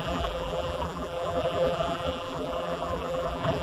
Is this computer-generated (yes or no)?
yes